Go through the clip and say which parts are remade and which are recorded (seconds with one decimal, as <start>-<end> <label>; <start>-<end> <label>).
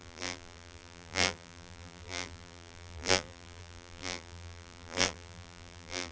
0.0-6.1 remade